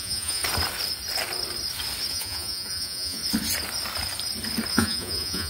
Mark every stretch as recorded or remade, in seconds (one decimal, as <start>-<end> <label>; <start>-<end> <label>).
0.0-0.4 remade; 0.4-2.1 recorded; 2.1-3.2 remade; 3.2-4.7 recorded; 4.7-5.5 remade